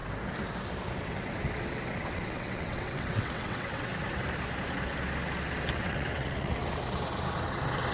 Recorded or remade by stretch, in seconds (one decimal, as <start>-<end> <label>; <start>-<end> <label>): 0.0-2.1 recorded; 2.1-3.9 remade; 3.9-5.7 recorded; 5.7-6.6 remade; 6.6-7.9 recorded

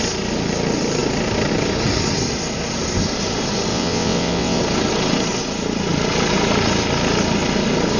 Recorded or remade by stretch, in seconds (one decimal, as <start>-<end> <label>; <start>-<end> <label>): 0.0-3.7 recorded; 3.7-4.6 remade; 4.6-8.0 recorded